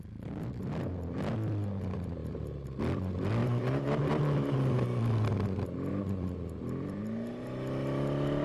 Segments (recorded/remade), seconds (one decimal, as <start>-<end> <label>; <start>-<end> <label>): 0.0-5.9 recorded; 5.9-7.0 remade; 7.0-8.4 recorded